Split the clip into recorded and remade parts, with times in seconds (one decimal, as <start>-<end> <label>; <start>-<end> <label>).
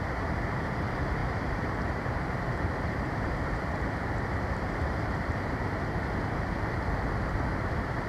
0.0-1.2 recorded; 1.2-6.1 remade; 6.1-8.1 recorded